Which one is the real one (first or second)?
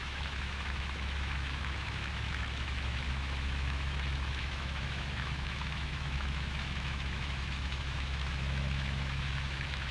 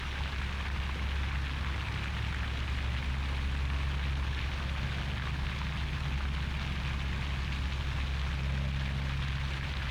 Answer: second